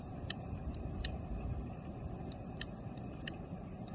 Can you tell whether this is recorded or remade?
remade